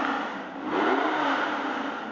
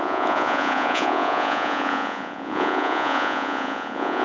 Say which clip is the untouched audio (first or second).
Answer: first